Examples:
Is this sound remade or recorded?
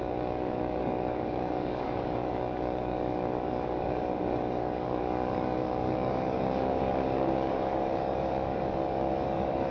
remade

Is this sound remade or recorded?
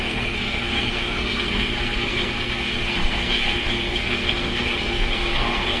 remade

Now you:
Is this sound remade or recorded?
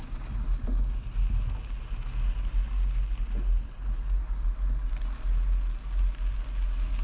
recorded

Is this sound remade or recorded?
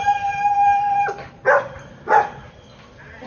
recorded